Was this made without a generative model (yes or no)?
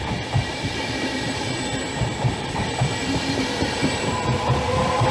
no